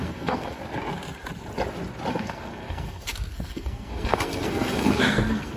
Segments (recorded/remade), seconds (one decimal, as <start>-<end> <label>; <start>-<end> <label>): 0.0-0.6 remade; 0.6-2.1 recorded; 2.1-5.6 remade